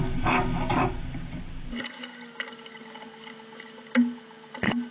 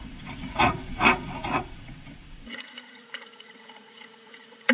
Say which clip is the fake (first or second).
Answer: second